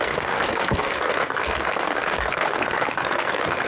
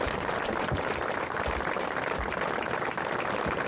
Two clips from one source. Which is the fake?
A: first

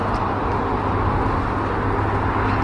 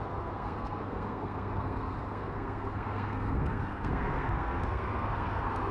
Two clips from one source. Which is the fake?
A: second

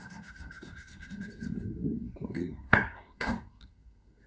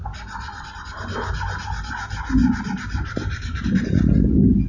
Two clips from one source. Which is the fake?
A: first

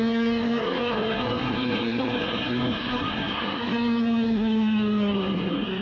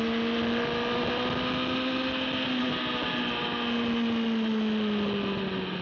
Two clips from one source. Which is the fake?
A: first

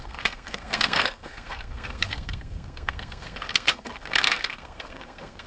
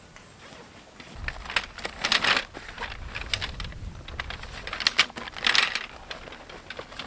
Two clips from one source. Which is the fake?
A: first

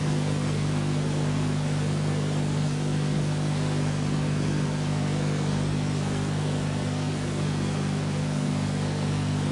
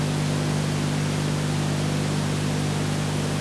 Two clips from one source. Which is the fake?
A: first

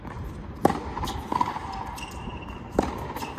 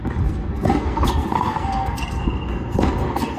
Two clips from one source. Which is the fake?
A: second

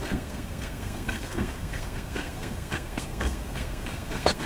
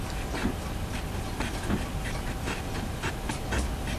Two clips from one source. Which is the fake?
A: first